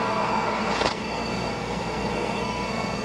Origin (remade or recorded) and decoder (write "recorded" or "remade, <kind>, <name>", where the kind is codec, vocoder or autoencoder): remade, codec, SNAC